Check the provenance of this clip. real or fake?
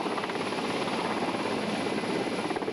real